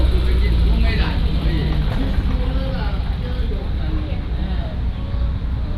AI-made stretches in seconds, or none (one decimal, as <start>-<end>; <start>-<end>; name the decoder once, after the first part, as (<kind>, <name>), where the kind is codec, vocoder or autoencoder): none